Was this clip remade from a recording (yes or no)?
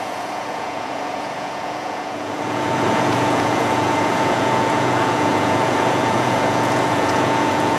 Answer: yes